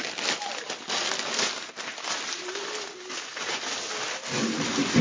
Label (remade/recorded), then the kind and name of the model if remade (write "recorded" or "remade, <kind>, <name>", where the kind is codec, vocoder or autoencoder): recorded